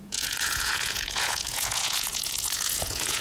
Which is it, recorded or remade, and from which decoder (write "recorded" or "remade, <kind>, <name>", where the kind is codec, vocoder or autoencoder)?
remade, vocoder, Vocos